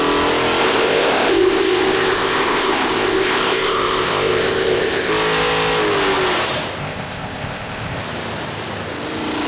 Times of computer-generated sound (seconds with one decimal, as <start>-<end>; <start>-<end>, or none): 0.6-5.1; 6.8-8.0